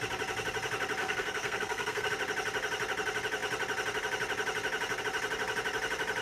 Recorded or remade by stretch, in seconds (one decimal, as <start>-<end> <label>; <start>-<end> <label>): 0.0-1.0 recorded; 1.0-2.1 remade; 2.1-6.2 recorded